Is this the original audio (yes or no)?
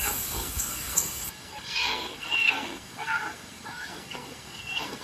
no